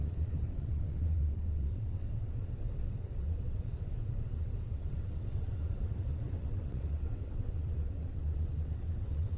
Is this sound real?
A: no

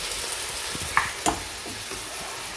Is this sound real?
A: yes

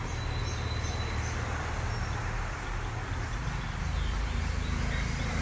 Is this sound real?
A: yes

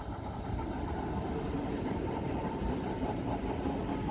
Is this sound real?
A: yes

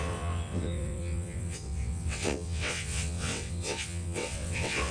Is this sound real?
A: no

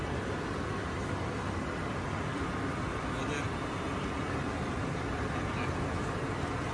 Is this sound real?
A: yes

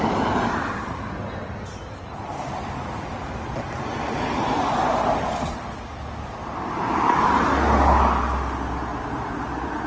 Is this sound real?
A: yes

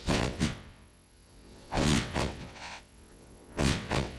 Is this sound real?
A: no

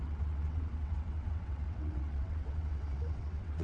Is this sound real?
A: no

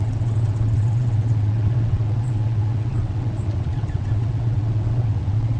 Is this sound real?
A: no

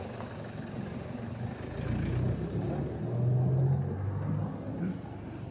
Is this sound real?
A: yes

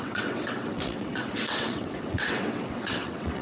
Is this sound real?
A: no